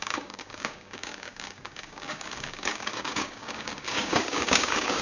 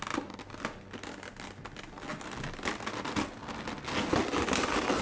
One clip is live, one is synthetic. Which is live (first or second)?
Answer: second